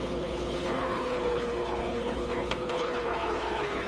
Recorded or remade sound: remade